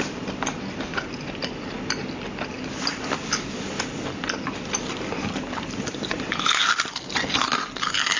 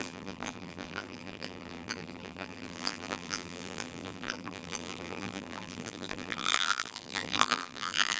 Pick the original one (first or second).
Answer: first